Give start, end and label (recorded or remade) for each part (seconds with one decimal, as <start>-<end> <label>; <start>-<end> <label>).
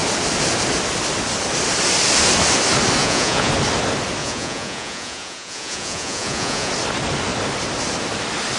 0.0-3.0 recorded; 3.0-3.5 remade; 3.5-4.2 recorded; 4.2-6.7 remade; 6.7-8.6 recorded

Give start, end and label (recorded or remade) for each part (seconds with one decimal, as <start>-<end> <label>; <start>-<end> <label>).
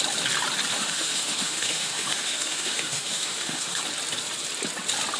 0.0-0.7 recorded; 0.7-3.8 remade; 3.8-5.2 recorded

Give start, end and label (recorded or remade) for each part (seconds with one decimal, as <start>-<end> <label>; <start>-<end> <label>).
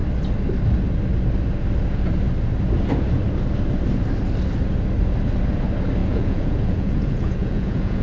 0.0-6.0 recorded; 6.0-8.0 remade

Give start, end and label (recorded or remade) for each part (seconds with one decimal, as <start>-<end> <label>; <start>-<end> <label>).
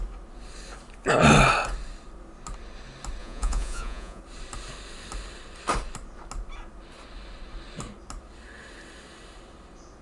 0.0-3.2 recorded; 3.2-4.2 remade; 4.2-10.0 recorded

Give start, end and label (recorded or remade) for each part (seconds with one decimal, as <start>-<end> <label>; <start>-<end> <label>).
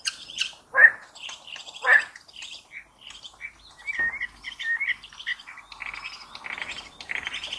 0.0-7.6 recorded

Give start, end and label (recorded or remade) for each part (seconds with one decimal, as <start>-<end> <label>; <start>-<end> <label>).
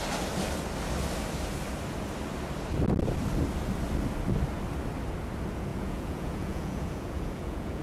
0.0-5.7 recorded; 5.7-7.8 remade